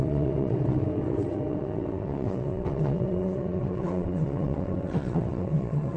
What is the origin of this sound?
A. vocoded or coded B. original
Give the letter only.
A